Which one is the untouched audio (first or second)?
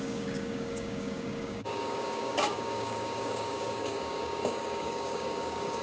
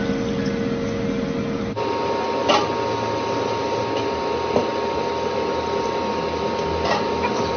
second